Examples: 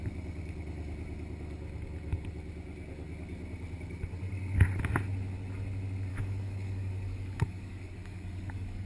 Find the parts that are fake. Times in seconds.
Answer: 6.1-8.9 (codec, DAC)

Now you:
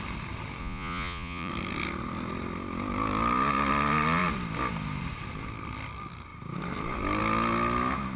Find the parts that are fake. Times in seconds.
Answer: 0.6-1.5 (vocoder, Vocos)

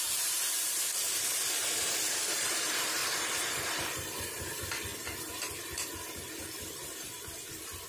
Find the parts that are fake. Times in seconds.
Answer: 0.0-0.6 (vocoder, BigVGAN v2); 1.6-3.0; 3.9-4.9; 7.1-7.9